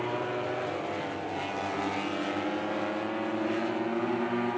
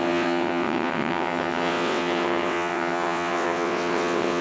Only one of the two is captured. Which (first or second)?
first